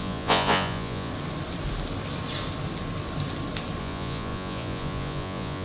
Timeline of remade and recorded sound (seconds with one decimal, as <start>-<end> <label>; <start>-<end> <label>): 0.0-1.1 remade; 1.1-3.8 recorded; 3.8-5.6 remade

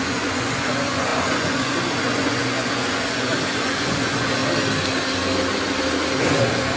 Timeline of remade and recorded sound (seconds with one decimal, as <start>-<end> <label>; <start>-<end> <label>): 0.0-4.4 remade; 4.4-6.2 recorded; 6.2-6.8 remade

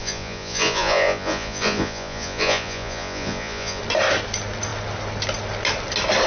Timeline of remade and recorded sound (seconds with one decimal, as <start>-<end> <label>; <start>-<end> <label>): 0.0-3.8 remade; 3.8-6.3 recorded